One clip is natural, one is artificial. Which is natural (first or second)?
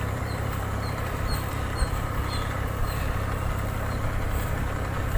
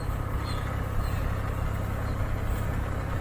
second